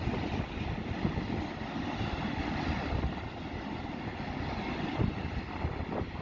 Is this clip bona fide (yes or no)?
yes